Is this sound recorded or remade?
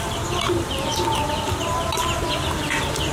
recorded